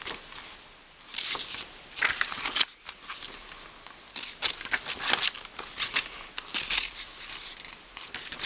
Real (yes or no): yes